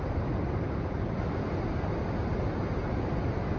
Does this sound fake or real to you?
real